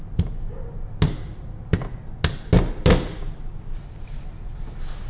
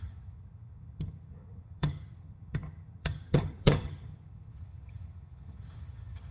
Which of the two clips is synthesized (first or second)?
second